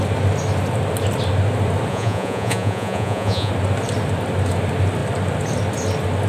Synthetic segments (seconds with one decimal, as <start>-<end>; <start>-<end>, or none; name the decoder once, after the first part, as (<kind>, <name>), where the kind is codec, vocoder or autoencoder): 1.9-3.5 (vocoder, Vocos)